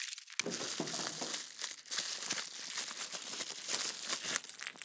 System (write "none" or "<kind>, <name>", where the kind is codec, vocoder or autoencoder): none